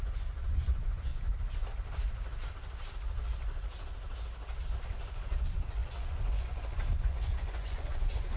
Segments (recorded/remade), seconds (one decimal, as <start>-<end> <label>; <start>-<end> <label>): 0.0-1.1 remade; 1.1-4.8 recorded; 4.8-8.4 remade